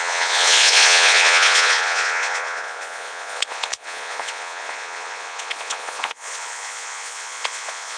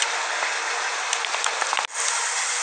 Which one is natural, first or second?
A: second